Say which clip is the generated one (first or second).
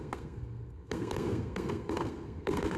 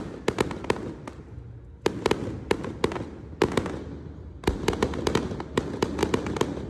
first